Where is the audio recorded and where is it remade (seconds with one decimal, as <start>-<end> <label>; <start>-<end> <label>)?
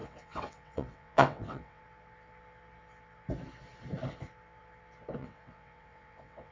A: 0.0-1.8 remade; 1.8-5.2 recorded; 5.2-6.5 remade